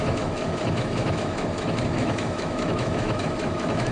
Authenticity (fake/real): fake